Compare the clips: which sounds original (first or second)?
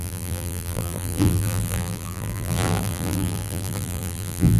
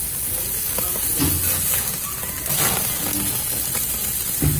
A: second